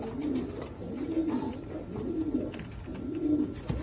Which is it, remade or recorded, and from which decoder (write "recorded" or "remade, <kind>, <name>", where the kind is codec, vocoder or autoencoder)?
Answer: recorded